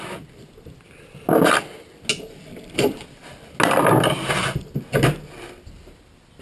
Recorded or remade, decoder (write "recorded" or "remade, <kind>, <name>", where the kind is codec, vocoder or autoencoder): recorded